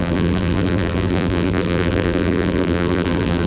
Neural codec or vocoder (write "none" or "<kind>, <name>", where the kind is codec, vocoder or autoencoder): vocoder, BigVGAN v2